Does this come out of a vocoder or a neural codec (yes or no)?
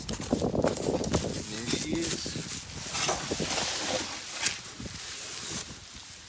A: no